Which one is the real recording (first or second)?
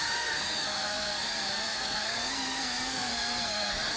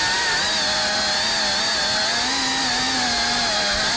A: second